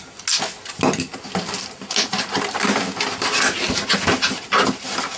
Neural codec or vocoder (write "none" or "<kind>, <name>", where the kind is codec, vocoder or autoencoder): none